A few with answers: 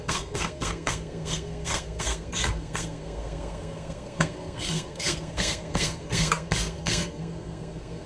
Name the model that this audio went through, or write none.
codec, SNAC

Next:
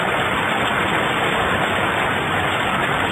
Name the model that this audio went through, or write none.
none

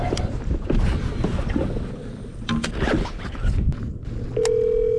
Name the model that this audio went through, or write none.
none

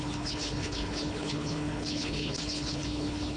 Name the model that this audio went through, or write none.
codec, HILCodec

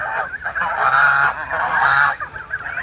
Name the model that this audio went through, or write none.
none